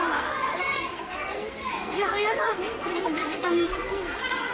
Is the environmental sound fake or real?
fake